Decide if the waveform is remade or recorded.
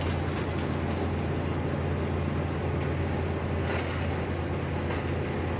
recorded